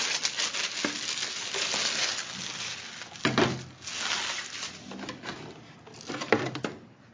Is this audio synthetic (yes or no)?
no